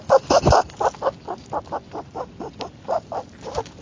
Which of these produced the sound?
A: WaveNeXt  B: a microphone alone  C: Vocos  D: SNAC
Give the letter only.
B